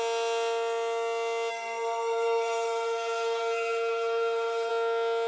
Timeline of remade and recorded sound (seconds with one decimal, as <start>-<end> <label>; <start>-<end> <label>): 0.0-1.5 recorded; 1.5-4.7 remade; 4.7-5.3 recorded